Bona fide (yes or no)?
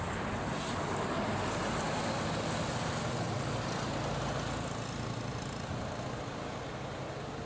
yes